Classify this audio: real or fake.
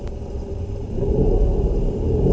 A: fake